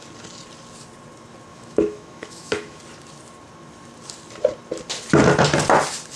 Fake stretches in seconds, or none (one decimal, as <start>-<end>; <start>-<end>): 1.5-2.8